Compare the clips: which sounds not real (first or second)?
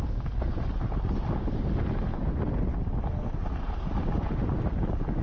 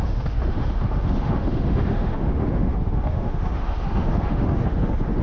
second